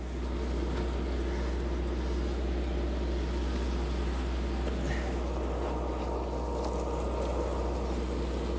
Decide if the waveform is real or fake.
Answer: real